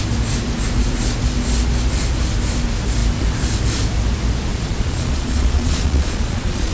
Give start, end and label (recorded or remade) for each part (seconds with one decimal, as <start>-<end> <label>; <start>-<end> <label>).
0.0-4.5 recorded; 4.5-6.7 remade